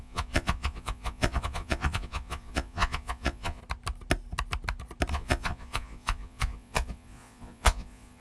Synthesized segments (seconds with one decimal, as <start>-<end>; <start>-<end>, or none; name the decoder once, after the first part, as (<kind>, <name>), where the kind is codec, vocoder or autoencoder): 0.0-3.6 (vocoder, Vocos); 5.1-8.2